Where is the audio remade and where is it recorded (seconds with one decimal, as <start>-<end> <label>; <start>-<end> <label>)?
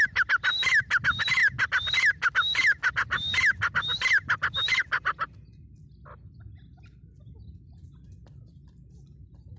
0.0-9.6 recorded